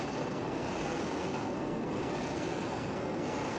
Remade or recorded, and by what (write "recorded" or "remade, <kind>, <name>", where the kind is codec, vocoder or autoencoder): remade, codec, SNAC